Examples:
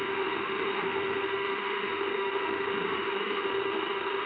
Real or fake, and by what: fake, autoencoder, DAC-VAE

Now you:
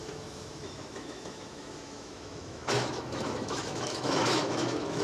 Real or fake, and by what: fake, autoencoder, DAC-VAE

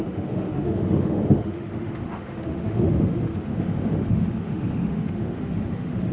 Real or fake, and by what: fake, autoencoder, DAC-VAE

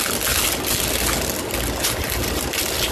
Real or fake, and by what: real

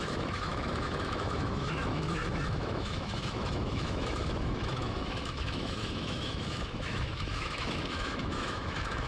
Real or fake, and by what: fake, autoencoder, DAC-VAE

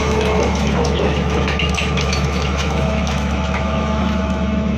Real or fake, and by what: fake, autoencoder, DAC-VAE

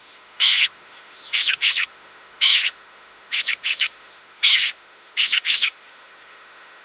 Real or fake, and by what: fake, autoencoder, DAC-VAE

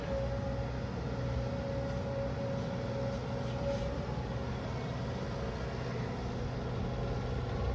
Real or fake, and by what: real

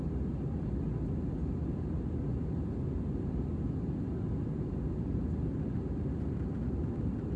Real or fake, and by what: real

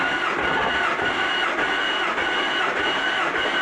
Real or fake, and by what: real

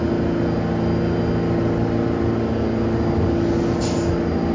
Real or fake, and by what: real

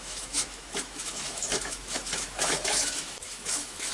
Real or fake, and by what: fake, autoencoder, DAC-VAE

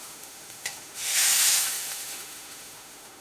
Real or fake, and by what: fake, autoencoder, DAC-VAE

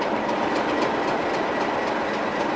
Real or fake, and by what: real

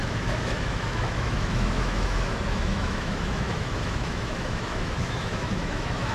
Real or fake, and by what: fake, autoencoder, DAC-VAE